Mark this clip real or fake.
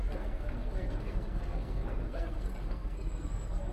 fake